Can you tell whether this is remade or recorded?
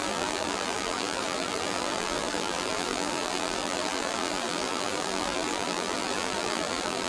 remade